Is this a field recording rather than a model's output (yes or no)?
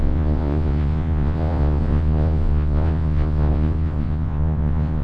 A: no